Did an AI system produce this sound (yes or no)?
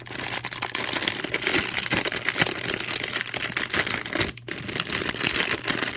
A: no